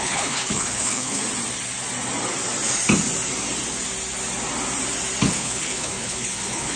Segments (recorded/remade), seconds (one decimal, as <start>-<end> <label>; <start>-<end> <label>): 0.0-1.2 remade; 1.2-5.3 recorded; 5.3-6.8 remade